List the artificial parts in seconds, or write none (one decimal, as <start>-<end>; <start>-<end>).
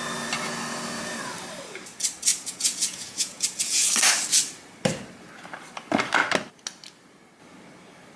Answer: 2.3-3.9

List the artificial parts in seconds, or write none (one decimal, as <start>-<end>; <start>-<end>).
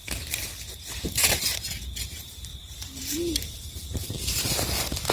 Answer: 0.0-5.1